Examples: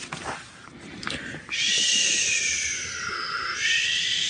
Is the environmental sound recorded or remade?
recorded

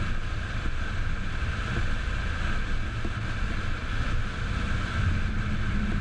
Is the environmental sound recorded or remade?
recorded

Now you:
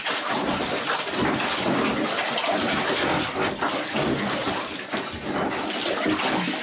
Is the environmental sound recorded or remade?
recorded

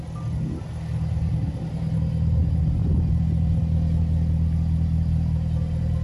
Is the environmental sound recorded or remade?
recorded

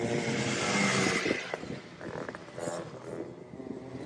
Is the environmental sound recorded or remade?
recorded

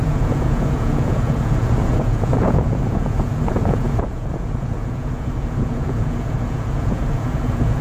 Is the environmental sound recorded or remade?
remade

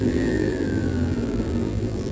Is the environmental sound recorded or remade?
remade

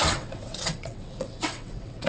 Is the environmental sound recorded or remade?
remade